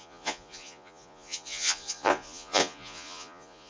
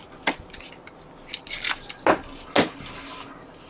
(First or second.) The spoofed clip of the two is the first